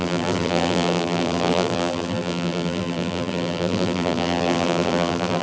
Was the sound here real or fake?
fake